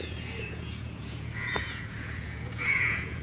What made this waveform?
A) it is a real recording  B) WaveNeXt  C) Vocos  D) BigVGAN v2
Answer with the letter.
C